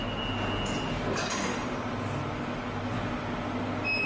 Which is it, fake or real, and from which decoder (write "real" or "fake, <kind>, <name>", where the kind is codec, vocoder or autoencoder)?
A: real